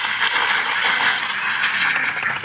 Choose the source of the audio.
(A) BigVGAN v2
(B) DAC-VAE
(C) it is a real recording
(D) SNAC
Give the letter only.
C